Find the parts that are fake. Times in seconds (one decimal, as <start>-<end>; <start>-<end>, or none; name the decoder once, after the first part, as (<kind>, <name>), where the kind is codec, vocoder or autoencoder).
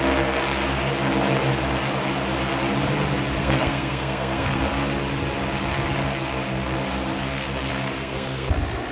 3.4-4.6 (codec, SNAC); 7.7-8.5